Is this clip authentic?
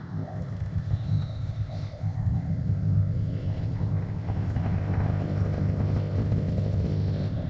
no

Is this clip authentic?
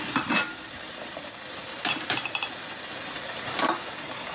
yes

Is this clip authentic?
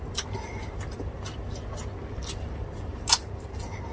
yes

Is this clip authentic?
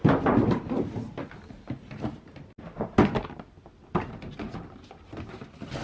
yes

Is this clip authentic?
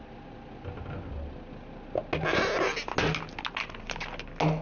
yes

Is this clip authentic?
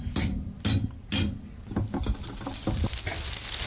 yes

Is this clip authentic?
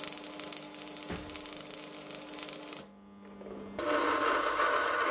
yes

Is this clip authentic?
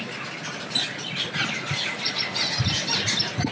yes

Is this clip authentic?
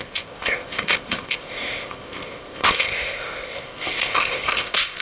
no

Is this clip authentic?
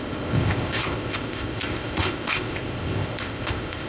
no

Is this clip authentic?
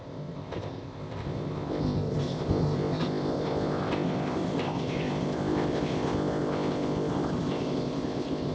no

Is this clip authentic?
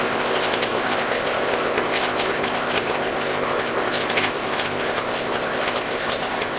no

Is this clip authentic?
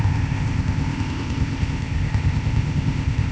no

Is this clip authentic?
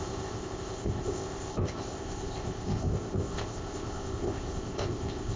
no